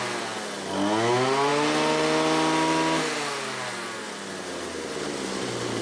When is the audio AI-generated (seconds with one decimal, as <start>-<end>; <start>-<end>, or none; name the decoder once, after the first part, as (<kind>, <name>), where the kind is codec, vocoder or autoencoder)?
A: none